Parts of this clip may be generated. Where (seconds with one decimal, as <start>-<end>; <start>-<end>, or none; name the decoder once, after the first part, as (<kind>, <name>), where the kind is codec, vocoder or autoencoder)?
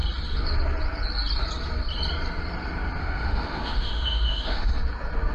3.0-4.7 (autoencoder, DAC-VAE)